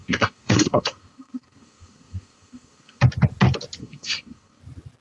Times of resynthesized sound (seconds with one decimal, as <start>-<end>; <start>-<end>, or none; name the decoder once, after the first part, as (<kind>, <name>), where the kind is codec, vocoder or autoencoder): 0.0-3.0 (codec, SNAC); 3.8-4.6